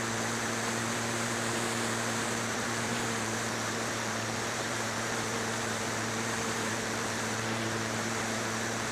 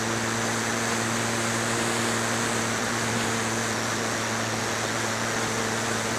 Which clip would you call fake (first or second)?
first